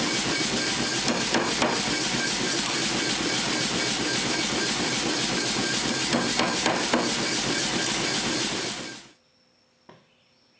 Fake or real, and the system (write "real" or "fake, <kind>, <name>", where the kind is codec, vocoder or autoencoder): real